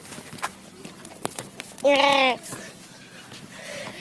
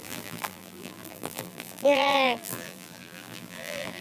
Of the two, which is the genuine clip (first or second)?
first